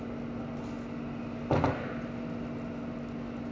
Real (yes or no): yes